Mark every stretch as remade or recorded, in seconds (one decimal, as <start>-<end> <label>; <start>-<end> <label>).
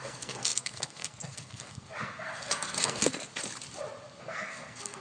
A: 0.0-3.3 remade; 3.3-4.2 recorded; 4.2-5.0 remade